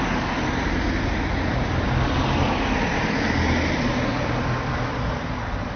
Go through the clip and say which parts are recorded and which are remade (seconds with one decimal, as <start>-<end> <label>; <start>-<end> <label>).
0.0-5.8 recorded